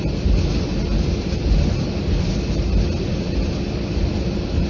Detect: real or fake real